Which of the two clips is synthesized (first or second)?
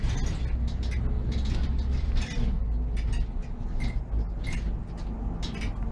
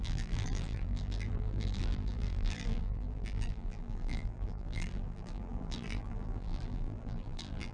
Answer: second